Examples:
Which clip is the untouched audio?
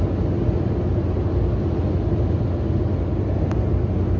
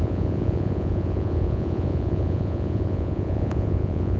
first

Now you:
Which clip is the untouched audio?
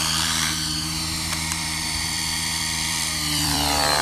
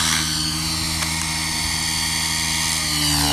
second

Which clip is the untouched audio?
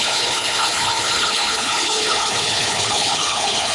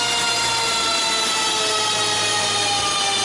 second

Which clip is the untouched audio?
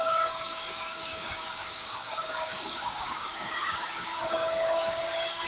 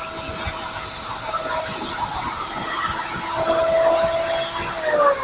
second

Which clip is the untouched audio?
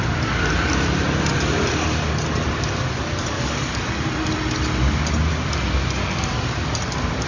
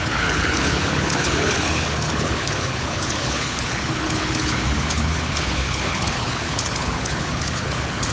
first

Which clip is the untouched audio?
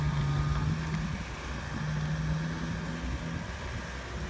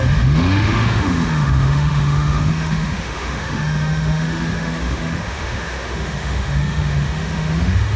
first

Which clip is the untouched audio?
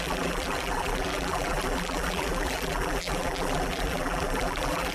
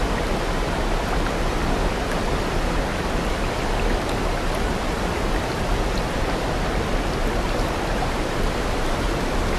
second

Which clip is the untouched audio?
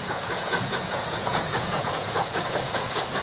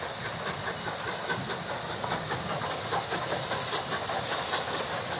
second